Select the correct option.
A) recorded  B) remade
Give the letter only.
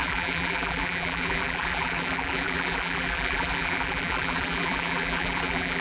B